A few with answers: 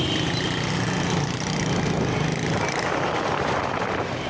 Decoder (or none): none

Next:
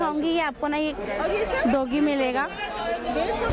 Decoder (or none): none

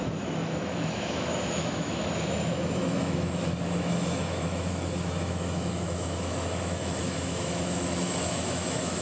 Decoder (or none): autoencoder, DAC-VAE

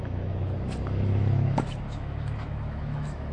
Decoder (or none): autoencoder, DAC-VAE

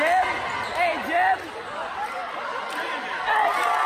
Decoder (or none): none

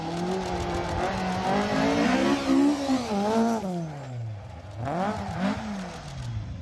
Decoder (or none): none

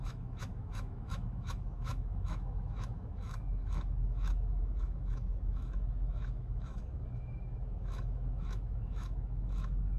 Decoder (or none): autoencoder, DAC-VAE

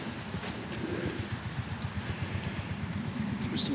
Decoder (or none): none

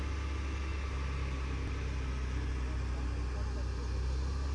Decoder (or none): none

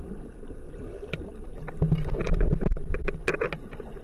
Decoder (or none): none